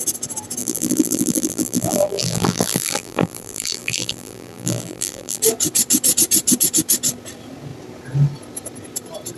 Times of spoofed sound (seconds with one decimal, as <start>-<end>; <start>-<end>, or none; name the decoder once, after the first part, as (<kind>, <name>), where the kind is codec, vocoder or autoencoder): 0.6-5.4 (vocoder, BigVGAN v2)